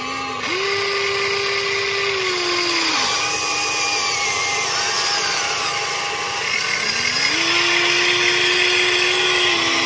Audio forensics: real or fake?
real